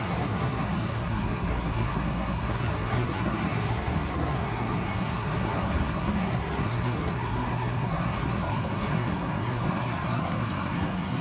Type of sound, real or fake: fake